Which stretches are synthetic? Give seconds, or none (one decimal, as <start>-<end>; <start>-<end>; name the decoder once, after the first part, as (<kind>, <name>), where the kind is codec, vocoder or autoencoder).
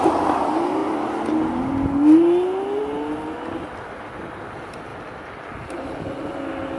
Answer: none